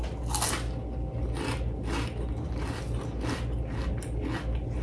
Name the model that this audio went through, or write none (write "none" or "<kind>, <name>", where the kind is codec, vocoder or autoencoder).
none